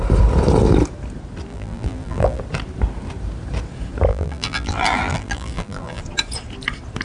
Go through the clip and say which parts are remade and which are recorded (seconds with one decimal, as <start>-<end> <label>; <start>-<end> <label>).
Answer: 0.0-1.5 recorded; 1.5-2.4 remade; 2.4-4.1 recorded; 4.1-6.0 remade; 6.0-7.0 recorded

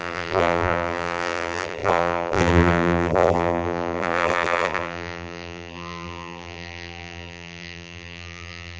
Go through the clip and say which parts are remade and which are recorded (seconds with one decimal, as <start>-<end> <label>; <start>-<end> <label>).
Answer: 0.0-8.8 remade